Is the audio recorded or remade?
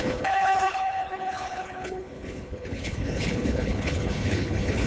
remade